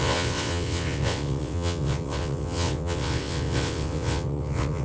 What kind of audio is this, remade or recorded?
remade